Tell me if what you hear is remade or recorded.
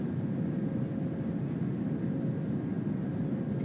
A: recorded